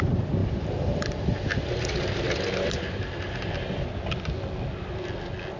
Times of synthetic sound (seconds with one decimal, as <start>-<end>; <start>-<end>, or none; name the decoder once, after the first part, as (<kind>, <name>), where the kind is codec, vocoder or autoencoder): 0.4-3.5 (vocoder, BigVGAN v2)